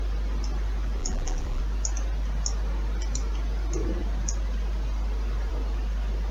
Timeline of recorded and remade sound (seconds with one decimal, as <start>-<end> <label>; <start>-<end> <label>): 0.0-1.0 recorded; 1.0-1.6 remade; 1.6-6.3 recorded